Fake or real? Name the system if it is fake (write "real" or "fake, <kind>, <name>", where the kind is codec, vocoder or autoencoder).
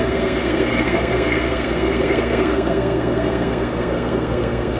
fake, codec, SNAC